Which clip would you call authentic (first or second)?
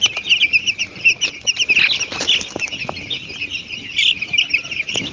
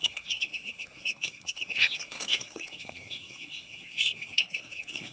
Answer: first